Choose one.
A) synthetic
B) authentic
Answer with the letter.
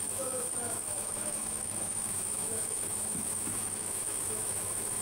A